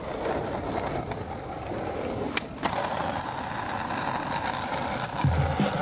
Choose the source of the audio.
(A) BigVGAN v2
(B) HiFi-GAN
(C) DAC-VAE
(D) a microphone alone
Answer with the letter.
D